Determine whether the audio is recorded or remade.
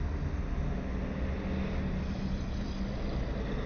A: recorded